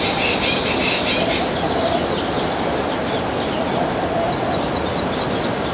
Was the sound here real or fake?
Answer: real